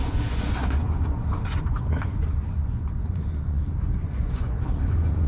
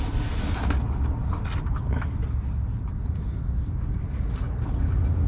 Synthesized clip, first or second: first